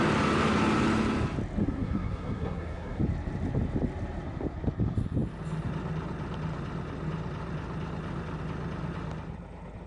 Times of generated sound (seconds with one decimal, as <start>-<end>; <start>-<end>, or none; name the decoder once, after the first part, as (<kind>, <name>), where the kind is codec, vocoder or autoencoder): 1.6-3.0 (codec, SNAC)